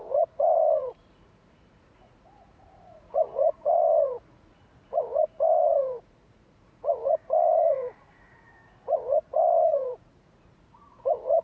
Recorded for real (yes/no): no